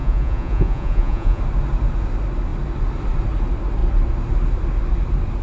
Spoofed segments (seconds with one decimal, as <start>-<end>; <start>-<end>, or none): 0.0-1.4